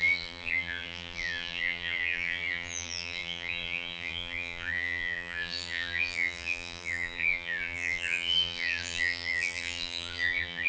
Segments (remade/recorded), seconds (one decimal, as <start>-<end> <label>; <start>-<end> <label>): 0.0-10.7 remade